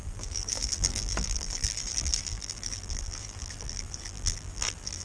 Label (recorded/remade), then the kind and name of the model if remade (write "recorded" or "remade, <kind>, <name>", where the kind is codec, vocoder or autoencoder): remade, vocoder, BigVGAN v2